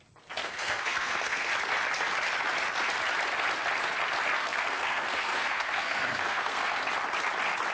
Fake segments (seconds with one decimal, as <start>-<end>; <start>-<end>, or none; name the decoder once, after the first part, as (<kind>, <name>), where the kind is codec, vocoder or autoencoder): 0.4-1.5 (codec, SNAC); 4.4-6.8

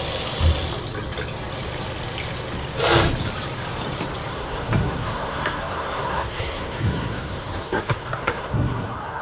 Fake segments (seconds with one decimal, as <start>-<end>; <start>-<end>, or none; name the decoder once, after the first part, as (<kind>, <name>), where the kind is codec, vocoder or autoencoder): 4.3-9.2 (codec, SNAC)